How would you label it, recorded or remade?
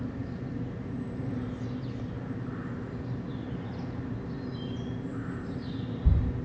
recorded